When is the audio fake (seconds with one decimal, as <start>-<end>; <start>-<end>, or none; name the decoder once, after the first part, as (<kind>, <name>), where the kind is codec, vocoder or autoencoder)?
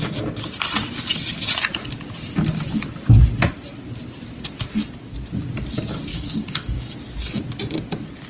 6.1-6.9 (codec, DAC)